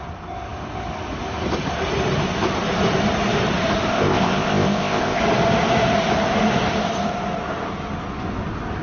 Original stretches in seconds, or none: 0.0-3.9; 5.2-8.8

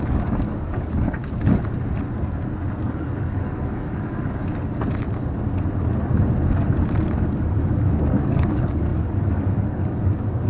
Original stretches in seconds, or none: 1.2-2.8; 4.5-7.4